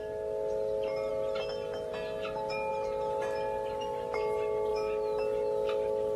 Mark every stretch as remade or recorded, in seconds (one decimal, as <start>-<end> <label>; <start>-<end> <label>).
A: 0.0-6.2 recorded